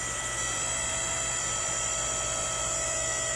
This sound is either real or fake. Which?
fake